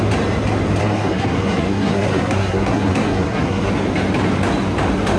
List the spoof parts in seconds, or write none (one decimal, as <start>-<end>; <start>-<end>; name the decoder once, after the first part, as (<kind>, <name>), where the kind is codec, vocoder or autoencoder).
0.8-3.7 (codec, SNAC)